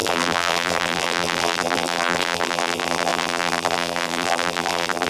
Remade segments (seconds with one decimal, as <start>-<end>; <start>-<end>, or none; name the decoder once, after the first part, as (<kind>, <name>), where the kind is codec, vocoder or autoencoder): 0.0-5.1 (vocoder, BigVGAN v2)